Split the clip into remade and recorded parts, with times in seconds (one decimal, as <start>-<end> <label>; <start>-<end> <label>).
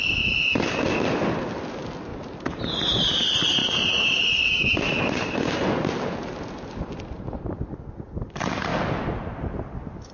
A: 0.0-2.1 recorded; 2.1-3.2 remade; 3.2-3.6 recorded; 3.6-7.7 remade; 7.7-10.1 recorded